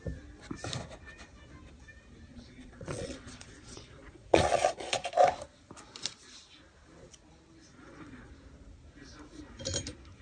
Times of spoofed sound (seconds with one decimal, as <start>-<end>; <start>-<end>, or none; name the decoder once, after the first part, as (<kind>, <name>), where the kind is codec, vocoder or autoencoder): 2.3-5.1 (vocoder, Vocos); 7.7-8.3